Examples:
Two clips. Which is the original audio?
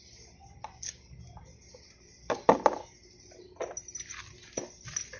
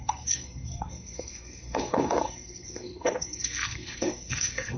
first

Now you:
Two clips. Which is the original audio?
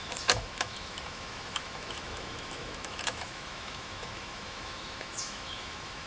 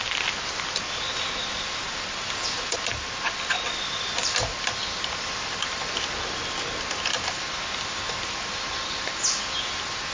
second